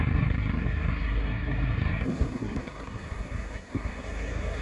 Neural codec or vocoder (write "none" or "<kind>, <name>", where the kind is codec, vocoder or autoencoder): codec, SNAC